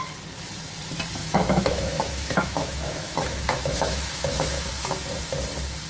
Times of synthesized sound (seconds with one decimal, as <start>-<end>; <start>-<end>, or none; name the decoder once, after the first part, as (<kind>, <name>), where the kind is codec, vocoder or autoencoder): 1.2-4.7 (autoencoder, DAC-VAE)